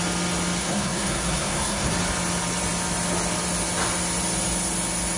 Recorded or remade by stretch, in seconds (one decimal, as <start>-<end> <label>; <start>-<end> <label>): 0.0-0.6 recorded; 0.6-1.9 remade; 1.9-5.2 recorded